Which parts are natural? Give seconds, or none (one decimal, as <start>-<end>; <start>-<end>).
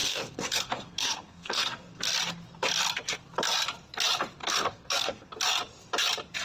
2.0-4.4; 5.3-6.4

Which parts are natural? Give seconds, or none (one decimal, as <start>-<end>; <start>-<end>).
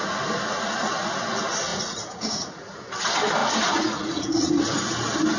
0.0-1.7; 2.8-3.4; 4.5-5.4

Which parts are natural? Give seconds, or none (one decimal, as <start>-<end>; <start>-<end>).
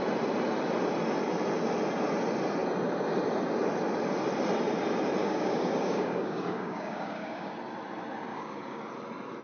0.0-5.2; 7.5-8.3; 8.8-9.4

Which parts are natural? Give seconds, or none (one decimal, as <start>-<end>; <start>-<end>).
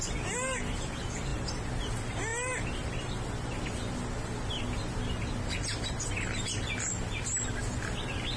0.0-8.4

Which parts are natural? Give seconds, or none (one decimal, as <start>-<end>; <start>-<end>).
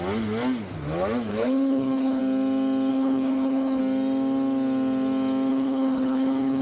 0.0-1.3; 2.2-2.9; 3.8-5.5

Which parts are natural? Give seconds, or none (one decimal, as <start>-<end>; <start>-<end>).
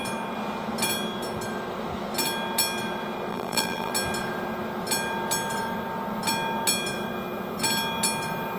0.0-3.3; 3.9-8.6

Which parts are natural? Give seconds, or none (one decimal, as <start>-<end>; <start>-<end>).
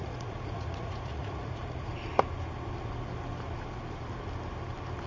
1.9-5.1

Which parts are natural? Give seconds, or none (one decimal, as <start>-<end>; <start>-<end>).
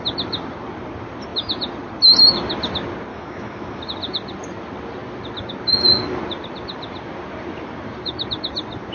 0.0-3.1; 3.8-8.9